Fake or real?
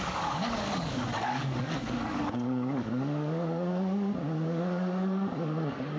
fake